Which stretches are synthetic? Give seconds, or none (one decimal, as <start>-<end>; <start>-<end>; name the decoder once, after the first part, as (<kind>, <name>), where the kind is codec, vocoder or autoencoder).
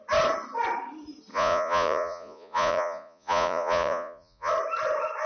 1.3-4.5 (vocoder, Vocos)